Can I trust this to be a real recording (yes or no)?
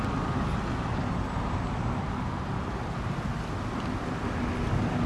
yes